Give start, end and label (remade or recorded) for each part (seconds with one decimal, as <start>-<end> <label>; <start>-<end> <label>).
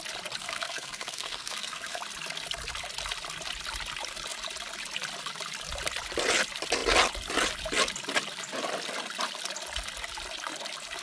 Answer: 0.0-0.4 recorded; 0.4-2.0 remade; 2.0-11.0 recorded